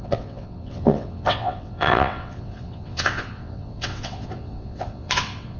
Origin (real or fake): fake